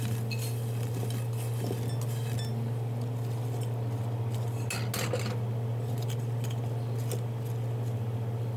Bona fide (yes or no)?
yes